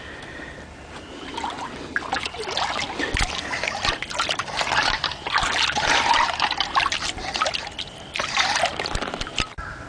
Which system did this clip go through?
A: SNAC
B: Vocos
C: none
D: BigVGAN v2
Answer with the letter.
C